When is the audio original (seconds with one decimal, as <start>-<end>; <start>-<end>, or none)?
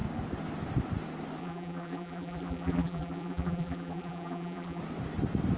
0.0-1.4; 4.8-5.6